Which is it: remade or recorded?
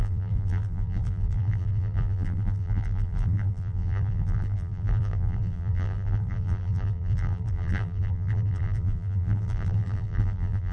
remade